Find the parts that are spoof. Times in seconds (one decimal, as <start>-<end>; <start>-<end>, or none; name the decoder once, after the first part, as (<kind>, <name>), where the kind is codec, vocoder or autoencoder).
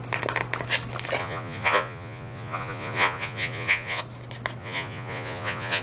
1.2-4.0 (vocoder, Vocos); 4.6-5.8